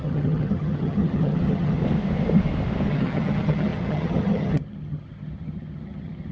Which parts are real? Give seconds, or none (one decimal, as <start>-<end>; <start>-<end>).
1.8-2.9